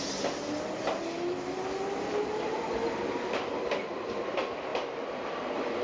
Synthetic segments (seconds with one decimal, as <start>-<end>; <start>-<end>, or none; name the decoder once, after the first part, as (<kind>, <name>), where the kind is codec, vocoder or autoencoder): none